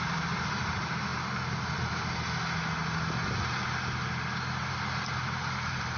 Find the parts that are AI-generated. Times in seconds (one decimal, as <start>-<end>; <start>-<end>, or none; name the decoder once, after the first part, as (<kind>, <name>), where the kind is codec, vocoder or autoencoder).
0.0-1.1 (vocoder, BigVGAN v2); 4.7-6.0